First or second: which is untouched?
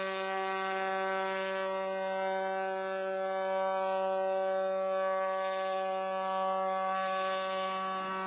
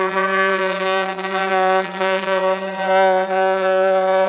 first